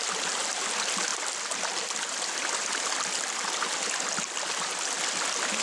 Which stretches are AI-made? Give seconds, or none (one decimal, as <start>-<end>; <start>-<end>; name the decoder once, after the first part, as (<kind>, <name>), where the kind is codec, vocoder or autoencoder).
none